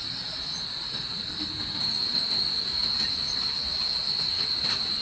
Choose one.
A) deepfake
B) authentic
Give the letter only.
B